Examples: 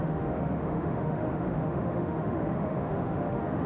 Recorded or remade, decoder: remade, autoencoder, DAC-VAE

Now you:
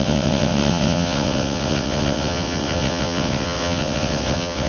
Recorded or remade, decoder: remade, vocoder, WaveNeXt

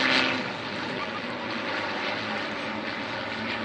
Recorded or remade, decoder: recorded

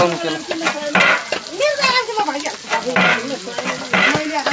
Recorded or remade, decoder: recorded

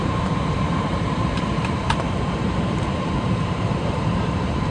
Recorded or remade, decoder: remade, vocoder, BigVGAN v2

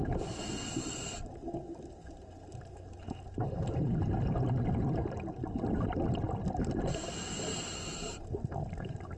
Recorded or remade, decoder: recorded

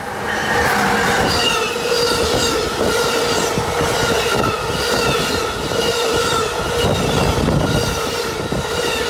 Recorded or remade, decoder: recorded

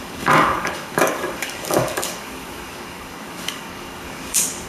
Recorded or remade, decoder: remade, codec, DAC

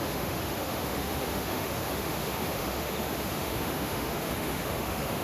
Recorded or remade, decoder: remade, autoencoder, DAC-VAE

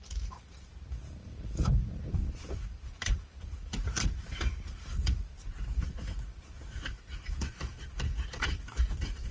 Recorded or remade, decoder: remade, vocoder, BigVGAN v2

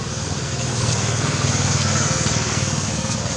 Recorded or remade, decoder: remade, codec, SNAC